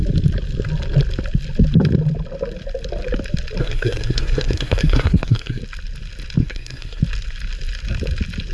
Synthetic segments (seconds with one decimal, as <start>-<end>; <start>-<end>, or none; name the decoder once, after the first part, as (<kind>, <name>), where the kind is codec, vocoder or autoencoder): 3.6-5.6 (codec, SNAC); 6.4-7.0